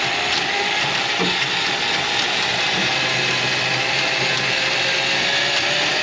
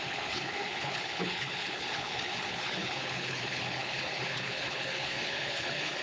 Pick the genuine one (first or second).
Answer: first